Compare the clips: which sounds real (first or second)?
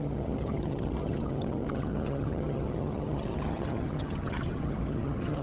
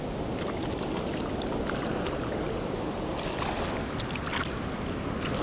second